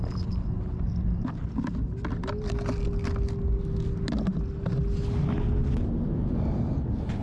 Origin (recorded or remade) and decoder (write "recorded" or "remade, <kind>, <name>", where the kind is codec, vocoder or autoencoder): recorded